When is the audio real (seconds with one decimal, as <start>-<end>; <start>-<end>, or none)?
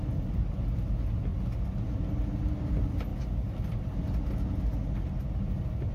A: 0.0-5.9